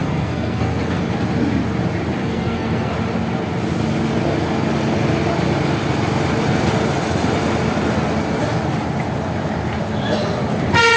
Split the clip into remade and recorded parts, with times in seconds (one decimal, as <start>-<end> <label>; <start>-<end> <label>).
0.0-1.0 remade; 1.0-2.2 recorded; 2.2-2.9 remade; 2.9-11.0 recorded